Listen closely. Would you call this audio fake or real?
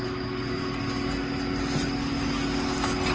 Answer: real